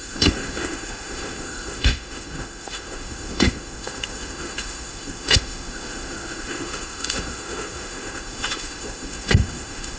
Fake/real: fake